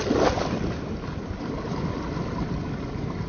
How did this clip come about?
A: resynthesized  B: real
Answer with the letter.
B